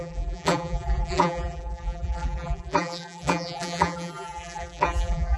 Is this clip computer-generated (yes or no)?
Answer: yes